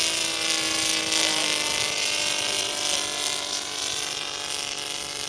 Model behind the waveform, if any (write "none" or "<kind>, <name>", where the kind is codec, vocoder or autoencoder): none